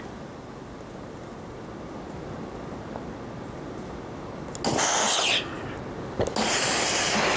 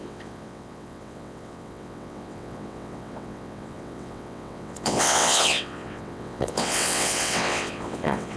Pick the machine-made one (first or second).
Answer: second